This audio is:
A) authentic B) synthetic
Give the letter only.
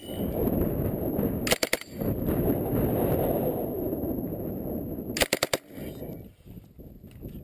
A